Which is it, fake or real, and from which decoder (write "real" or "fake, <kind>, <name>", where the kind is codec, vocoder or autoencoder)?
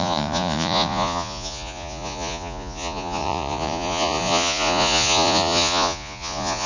fake, vocoder, Vocos